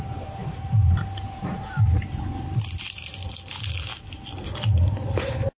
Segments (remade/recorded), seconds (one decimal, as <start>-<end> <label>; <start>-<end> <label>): 0.0-0.4 recorded; 0.4-3.4 remade; 3.4-5.6 recorded